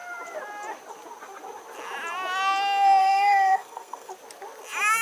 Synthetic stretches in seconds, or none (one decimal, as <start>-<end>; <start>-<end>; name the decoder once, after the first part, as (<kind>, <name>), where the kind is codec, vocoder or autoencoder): 3.0-4.1 (codec, SNAC)